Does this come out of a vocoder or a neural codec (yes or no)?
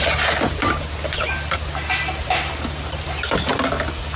no